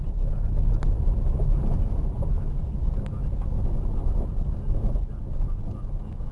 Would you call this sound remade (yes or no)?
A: no